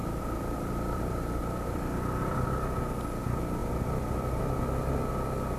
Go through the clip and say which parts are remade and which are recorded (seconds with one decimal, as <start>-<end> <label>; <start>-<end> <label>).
0.0-3.2 remade; 3.2-5.6 recorded